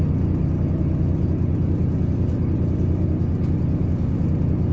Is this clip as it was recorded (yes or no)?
yes